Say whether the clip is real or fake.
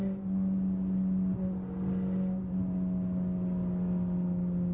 real